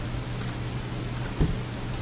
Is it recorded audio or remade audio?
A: recorded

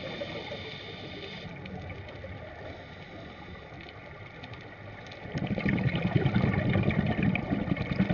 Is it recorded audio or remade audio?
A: recorded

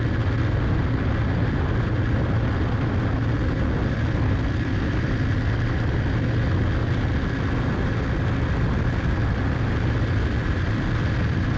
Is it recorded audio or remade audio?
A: recorded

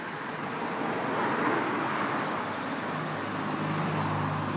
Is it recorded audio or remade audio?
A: recorded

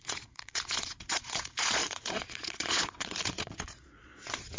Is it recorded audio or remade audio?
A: remade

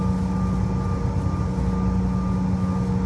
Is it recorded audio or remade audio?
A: recorded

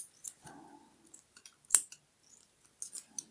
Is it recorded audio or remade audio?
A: recorded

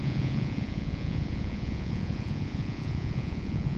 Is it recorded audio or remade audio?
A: remade